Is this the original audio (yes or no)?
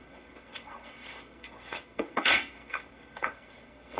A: no